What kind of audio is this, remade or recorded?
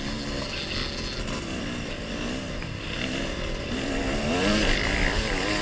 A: recorded